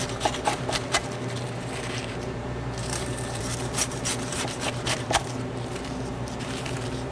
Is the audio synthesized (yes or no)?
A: yes